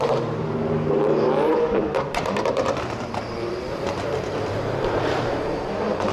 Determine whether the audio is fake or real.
fake